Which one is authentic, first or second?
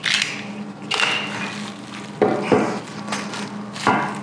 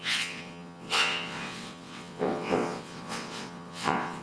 first